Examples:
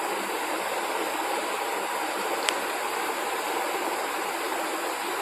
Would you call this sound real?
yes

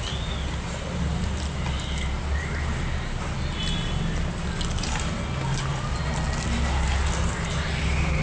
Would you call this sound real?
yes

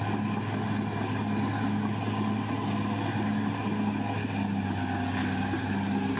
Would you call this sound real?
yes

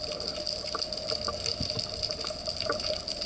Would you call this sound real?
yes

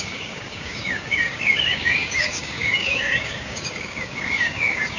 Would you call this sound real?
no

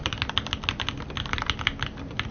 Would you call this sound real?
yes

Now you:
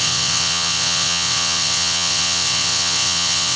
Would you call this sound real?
no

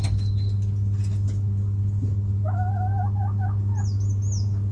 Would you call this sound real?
yes